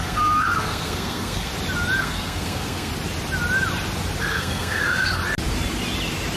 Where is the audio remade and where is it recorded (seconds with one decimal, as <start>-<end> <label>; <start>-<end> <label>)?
0.0-1.5 remade; 1.5-2.0 recorded; 2.0-2.9 remade; 2.9-4.2 recorded; 4.2-5.2 remade; 5.2-6.4 recorded

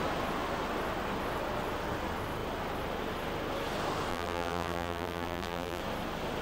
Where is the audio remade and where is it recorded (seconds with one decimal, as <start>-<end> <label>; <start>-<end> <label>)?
0.0-4.1 recorded; 4.1-5.8 remade; 5.8-6.4 recorded

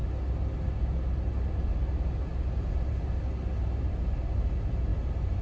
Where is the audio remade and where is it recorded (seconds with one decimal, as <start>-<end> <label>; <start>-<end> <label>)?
0.0-2.3 recorded; 2.3-3.1 remade; 3.1-4.9 recorded; 4.9-5.4 remade

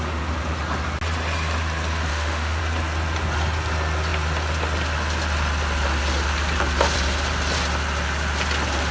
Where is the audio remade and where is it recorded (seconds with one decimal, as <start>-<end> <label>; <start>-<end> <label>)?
0.0-2.1 recorded; 2.1-2.6 remade; 2.6-8.9 recorded

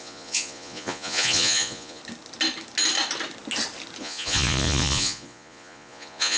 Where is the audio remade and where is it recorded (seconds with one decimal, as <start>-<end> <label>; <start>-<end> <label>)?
0.0-2.0 remade; 2.0-4.0 recorded; 4.0-6.4 remade